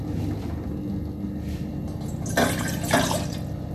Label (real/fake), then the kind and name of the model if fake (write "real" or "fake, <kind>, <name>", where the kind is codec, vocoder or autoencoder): real